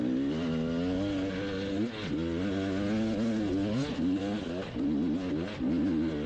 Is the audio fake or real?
real